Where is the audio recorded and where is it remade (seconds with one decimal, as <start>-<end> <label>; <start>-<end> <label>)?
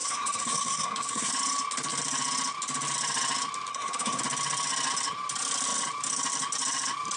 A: 0.0-1.3 remade; 1.3-3.7 recorded; 3.7-4.2 remade; 4.2-7.2 recorded